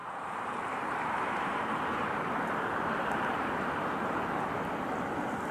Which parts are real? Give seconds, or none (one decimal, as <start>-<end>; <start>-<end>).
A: 3.3-5.5